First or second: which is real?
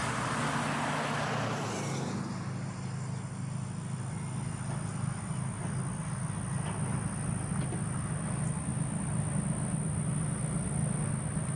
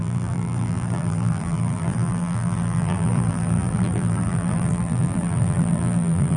first